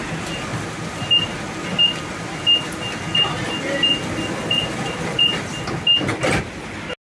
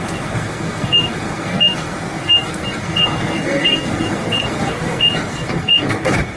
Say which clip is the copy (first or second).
second